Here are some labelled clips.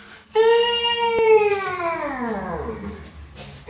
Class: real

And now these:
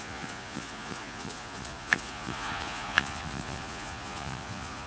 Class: fake